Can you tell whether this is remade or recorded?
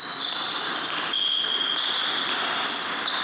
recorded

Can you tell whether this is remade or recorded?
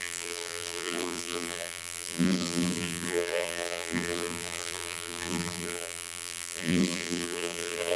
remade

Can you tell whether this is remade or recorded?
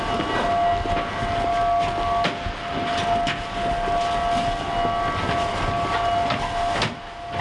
recorded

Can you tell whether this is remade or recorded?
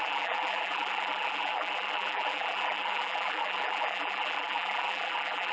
remade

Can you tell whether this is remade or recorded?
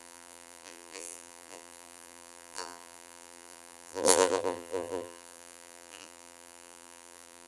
remade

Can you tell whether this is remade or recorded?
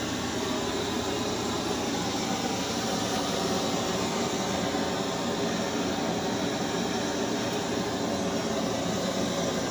remade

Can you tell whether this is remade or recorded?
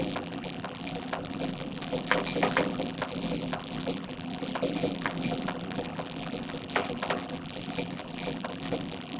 remade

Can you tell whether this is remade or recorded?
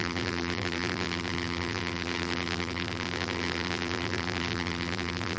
remade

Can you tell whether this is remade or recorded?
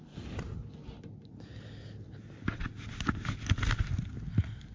recorded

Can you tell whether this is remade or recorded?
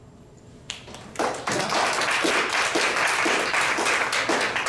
remade